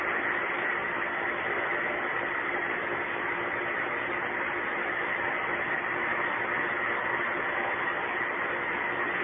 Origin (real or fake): real